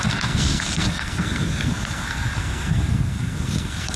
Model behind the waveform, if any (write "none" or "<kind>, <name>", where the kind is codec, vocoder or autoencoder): codec, SNAC